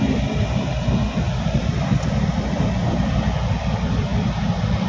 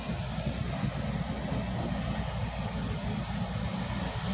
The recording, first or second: second